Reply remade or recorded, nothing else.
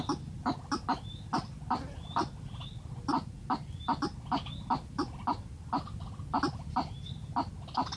remade